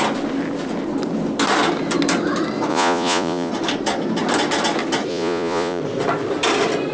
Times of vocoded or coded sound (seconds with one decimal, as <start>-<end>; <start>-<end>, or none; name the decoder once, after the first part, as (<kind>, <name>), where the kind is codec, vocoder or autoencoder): 2.7-3.5 (vocoder, Vocos); 5.1-5.8